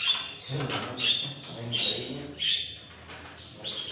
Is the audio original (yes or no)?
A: yes